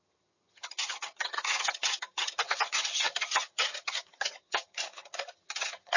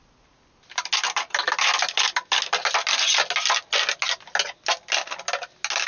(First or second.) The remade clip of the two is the first